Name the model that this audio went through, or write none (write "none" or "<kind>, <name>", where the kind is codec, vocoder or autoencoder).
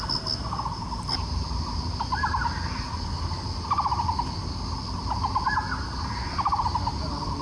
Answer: none